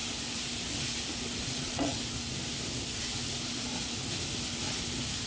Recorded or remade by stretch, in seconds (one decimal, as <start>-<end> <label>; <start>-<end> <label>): 0.0-1.5 recorded; 1.5-2.0 remade; 2.0-5.3 recorded

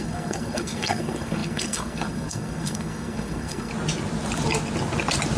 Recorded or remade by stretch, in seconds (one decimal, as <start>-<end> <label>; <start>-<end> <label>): 0.0-3.7 remade; 3.7-5.4 recorded